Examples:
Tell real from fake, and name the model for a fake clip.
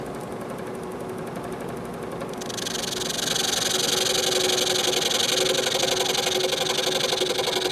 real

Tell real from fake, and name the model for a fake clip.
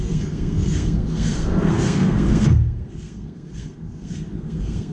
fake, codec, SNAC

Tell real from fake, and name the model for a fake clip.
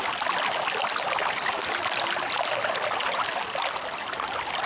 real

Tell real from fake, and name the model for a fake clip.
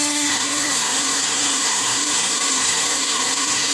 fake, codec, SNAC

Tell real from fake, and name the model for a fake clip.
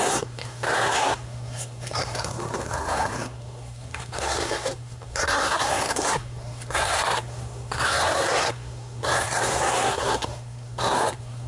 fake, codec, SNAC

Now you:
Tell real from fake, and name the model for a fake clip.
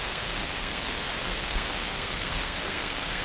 fake, codec, SNAC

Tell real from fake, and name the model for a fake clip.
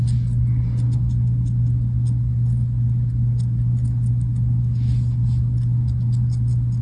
real